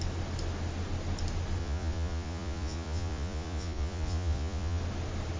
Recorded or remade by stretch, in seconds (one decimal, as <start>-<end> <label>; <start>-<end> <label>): 0.0-1.6 recorded; 1.6-4.8 remade; 4.8-5.4 recorded